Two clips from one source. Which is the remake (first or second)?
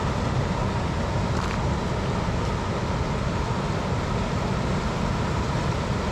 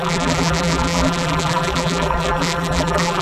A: second